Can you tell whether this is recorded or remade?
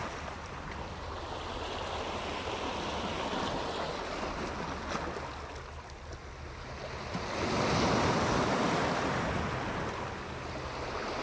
recorded